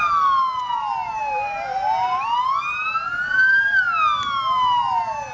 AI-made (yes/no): no